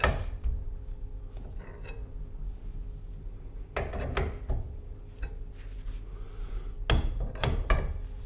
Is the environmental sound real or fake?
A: real